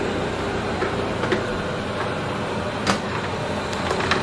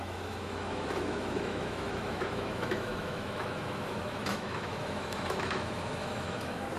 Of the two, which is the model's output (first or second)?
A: second